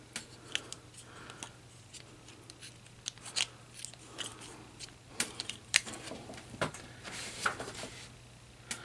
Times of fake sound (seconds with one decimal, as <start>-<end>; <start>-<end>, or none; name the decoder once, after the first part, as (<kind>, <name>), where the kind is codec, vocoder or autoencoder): 4.3-7.9 (vocoder, BigVGAN v2)